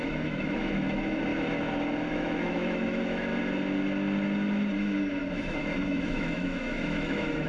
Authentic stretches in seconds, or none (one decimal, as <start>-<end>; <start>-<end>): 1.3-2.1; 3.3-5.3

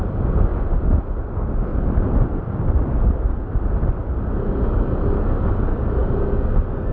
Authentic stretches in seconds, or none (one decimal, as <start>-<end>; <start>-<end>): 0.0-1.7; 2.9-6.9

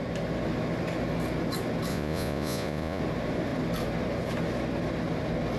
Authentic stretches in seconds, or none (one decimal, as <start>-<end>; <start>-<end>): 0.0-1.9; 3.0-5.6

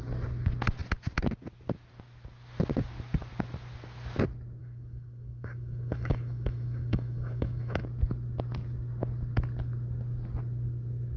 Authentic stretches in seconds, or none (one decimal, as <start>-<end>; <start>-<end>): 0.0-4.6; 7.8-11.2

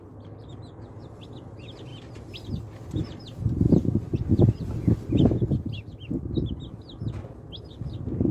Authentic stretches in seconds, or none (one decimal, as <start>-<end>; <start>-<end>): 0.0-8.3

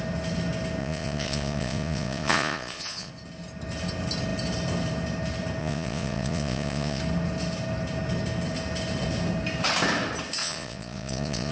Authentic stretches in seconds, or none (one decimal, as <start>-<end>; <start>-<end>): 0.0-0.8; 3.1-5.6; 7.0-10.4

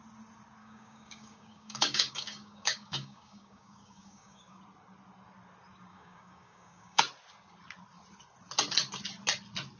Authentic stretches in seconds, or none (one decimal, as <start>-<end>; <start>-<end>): 0.0-0.6; 4.6-5.9; 7.0-9.8